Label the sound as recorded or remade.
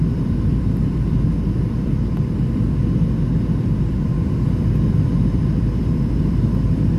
remade